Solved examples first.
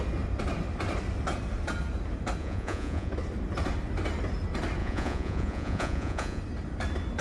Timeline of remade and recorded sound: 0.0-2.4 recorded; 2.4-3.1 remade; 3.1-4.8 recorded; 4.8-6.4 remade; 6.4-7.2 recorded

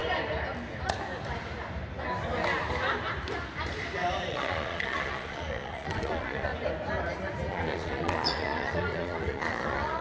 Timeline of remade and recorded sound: 0.0-4.3 recorded; 4.3-6.5 remade; 6.5-7.5 recorded; 7.5-10.0 remade

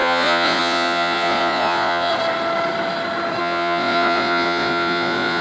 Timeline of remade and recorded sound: 0.0-2.1 remade; 2.1-3.4 recorded; 3.4-5.4 remade

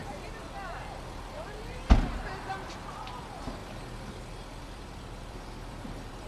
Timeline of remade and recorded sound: 0.0-3.6 remade; 3.6-4.6 recorded; 4.6-6.3 remade